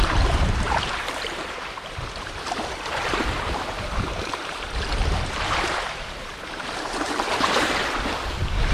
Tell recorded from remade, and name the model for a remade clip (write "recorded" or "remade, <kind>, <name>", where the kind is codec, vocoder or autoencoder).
remade, vocoder, BigVGAN v2